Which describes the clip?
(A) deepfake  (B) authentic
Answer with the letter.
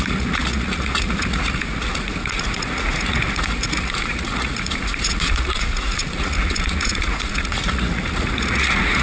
A